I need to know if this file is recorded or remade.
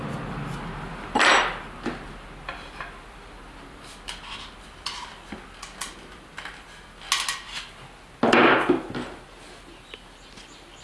recorded